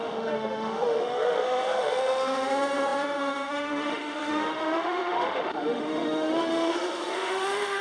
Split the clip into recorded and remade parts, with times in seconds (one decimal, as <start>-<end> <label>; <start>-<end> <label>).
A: 0.0-7.8 remade